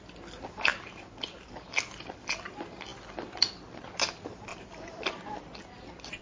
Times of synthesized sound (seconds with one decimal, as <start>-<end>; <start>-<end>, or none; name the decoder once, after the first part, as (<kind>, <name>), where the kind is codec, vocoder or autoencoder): 4.5-5.1 (vocoder, BigVGAN v2)